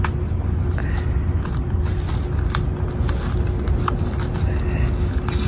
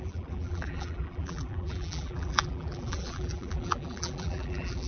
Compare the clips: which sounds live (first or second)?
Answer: first